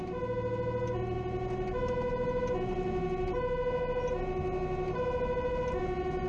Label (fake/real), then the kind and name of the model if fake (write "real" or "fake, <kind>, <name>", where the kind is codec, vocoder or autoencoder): real